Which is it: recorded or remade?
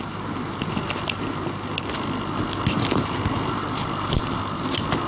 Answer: recorded